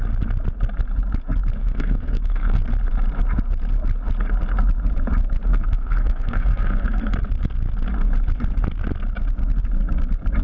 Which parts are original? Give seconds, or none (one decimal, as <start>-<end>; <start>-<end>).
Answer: 0.0-1.6; 2.6-5.5; 7.1-10.4